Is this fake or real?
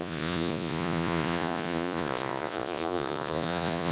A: fake